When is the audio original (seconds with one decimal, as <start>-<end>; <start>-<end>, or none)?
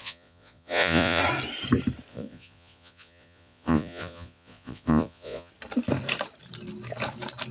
1.2-2.1; 5.5-7.5